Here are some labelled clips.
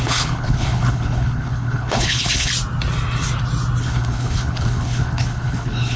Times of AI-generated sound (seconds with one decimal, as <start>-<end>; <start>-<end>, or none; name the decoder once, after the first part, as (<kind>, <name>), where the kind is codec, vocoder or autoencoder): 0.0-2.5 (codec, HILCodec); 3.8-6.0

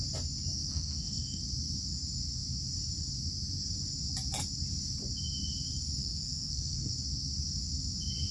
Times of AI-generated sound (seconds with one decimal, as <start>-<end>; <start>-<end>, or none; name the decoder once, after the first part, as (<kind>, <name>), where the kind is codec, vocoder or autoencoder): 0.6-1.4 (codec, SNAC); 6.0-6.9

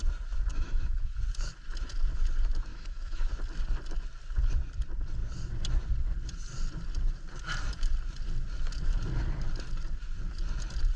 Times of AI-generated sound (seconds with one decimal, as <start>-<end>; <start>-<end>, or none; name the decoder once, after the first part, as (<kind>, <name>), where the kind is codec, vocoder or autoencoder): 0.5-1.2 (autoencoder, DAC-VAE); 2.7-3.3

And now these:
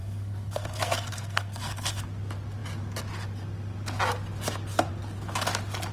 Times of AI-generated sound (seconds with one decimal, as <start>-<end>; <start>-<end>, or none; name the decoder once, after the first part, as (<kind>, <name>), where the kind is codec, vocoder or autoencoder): 0.0-2.0 (codec, SNAC)

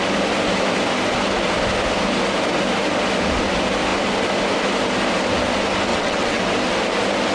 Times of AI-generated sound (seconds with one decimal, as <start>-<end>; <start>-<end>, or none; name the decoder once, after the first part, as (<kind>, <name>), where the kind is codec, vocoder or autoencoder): 5.9-6.4 (vocoder, WaveNeXt)